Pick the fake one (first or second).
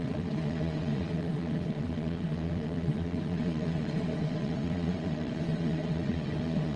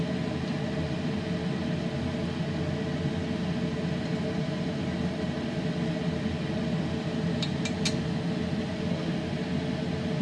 first